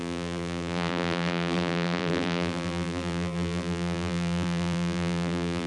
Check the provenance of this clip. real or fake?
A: fake